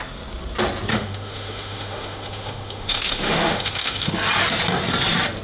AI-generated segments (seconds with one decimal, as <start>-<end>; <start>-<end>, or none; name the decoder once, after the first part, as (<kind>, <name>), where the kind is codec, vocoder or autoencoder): 0.9-4.1 (autoencoder, DAC-VAE)